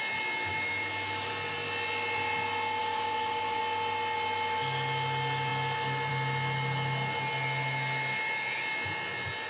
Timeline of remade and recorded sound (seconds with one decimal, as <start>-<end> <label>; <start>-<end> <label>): 0.0-0.5 recorded; 0.5-1.3 remade; 1.3-2.8 recorded; 2.8-3.6 remade; 3.6-9.5 recorded